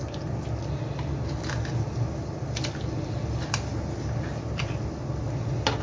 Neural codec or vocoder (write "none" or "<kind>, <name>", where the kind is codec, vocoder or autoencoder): none